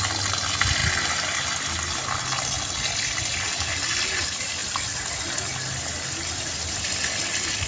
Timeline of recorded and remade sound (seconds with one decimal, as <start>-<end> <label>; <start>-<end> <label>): 0.0-7.7 recorded